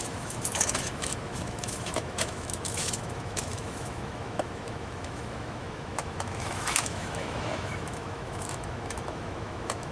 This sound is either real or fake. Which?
fake